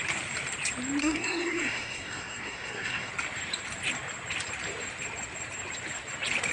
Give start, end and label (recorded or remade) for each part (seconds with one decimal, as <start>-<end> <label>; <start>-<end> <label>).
0.0-1.0 recorded; 1.0-3.1 remade; 3.1-6.5 recorded